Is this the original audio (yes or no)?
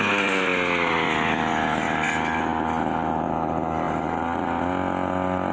yes